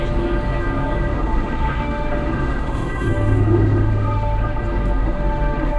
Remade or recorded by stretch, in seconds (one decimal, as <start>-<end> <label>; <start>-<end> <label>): 0.0-1.1 recorded; 1.1-4.6 remade; 4.6-5.0 recorded; 5.0-5.8 remade